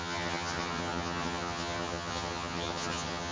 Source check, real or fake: fake